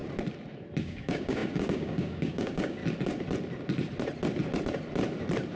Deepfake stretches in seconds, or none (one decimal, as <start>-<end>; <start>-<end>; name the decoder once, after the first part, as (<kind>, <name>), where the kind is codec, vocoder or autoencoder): 0.8-2.8 (codec, DAC)